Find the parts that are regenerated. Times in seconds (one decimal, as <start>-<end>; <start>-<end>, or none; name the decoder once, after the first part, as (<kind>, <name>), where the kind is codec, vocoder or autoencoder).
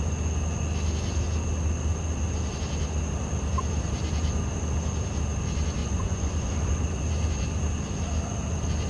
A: 5.8-6.7 (vocoder, Vocos)